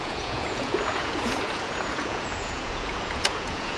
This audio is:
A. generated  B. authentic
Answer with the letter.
A